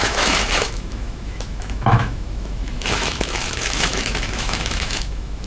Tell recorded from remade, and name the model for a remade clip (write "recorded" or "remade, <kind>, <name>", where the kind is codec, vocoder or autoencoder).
remade, autoencoder, DAC-VAE